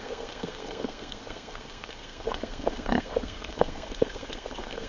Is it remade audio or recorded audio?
remade